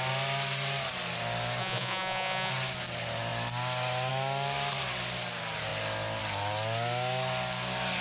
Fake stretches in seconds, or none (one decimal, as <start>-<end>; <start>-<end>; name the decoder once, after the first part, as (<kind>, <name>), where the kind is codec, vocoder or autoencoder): 1.6-2.5 (vocoder, Vocos)